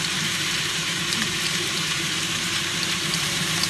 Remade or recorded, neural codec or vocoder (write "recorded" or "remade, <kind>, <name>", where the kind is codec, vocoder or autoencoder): remade, vocoder, BigVGAN v2